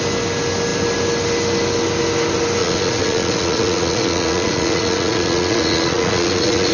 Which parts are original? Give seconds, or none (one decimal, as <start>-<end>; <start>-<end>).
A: 0.0-2.6